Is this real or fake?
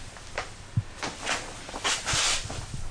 real